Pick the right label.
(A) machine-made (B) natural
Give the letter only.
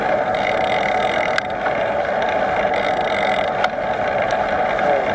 B